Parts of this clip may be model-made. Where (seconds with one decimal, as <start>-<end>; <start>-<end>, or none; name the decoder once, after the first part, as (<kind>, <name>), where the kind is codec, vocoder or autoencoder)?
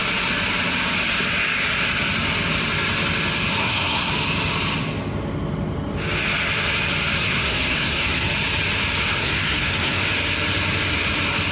3.6-4.1 (codec, SNAC); 7.2-8.3; 9.2-10.0